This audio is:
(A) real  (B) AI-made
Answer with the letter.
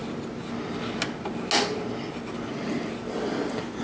A